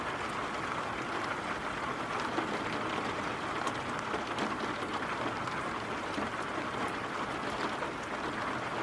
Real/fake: real